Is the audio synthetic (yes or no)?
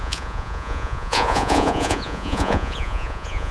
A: yes